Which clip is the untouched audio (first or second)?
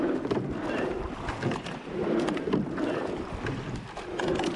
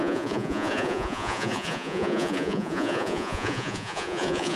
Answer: first